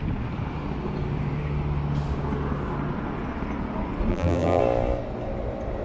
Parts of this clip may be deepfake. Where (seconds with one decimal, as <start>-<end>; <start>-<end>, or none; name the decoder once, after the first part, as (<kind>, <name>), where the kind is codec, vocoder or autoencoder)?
4.1-4.6 (vocoder, BigVGAN v2)